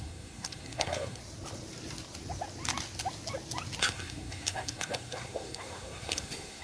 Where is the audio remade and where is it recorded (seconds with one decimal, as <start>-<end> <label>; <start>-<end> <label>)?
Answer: 0.0-1.2 remade; 1.2-3.8 recorded; 3.8-6.6 remade